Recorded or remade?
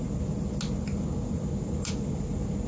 recorded